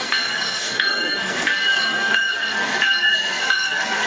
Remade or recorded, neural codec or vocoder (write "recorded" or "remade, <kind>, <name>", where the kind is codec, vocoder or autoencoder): remade, codec, SNAC